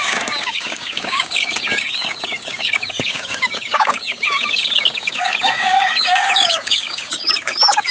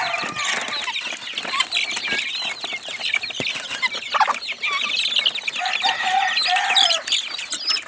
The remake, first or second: first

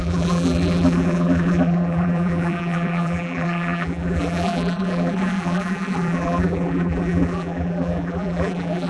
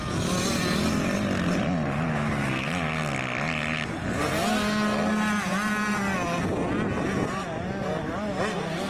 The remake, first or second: first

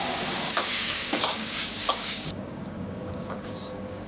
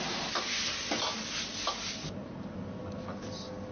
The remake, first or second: first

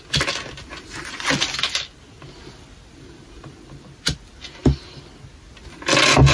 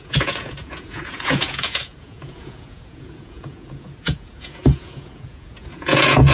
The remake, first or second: second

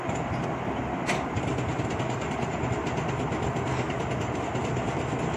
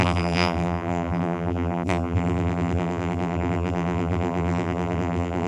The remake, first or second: second